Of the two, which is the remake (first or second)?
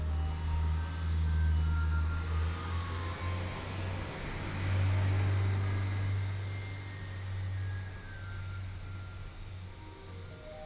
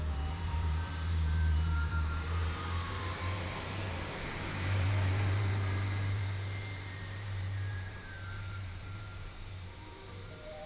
second